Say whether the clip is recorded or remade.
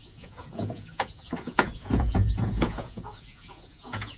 remade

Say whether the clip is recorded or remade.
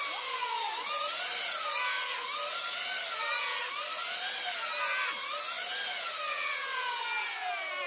recorded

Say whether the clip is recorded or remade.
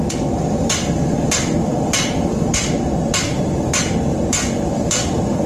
remade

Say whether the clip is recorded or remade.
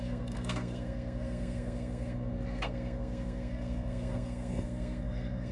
remade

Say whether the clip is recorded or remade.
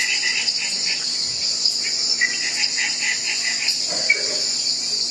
remade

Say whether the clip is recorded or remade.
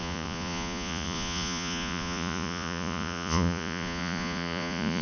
remade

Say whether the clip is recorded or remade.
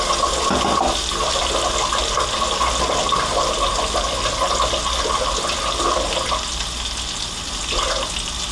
recorded